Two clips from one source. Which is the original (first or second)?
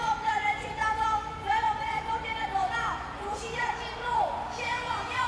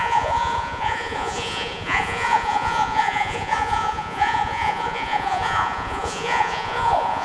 first